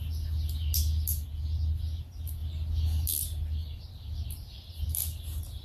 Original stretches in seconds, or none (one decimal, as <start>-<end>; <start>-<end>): 0.0-3.6; 5.0-5.6